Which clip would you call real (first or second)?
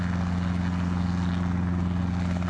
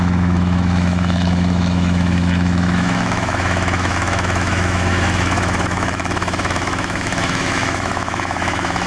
first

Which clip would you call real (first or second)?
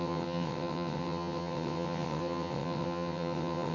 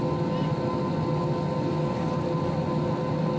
second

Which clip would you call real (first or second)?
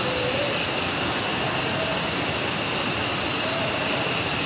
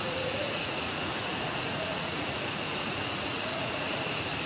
first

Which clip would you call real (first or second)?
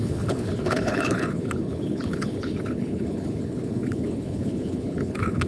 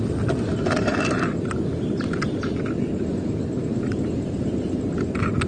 second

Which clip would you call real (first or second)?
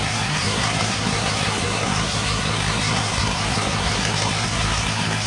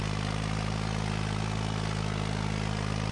second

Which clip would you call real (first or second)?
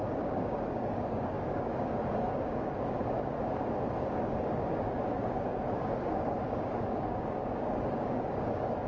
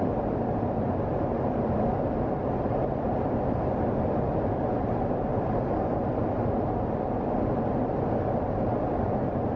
second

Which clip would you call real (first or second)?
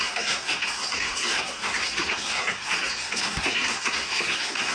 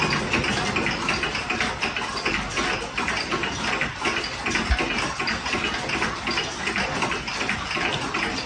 second